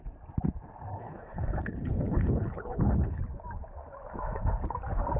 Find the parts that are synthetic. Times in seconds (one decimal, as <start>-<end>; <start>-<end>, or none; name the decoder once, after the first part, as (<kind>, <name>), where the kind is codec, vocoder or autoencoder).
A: 0.9-3.2 (codec, HILCodec)